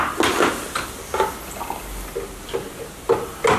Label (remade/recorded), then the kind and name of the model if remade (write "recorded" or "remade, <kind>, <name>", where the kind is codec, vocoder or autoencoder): recorded